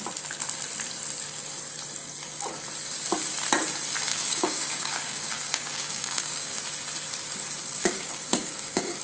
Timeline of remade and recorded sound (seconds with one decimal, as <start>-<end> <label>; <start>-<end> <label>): 0.0-4.1 recorded; 4.1-6.6 remade; 6.6-7.8 recorded; 7.8-9.0 remade